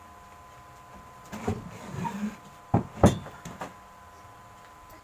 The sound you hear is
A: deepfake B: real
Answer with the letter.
B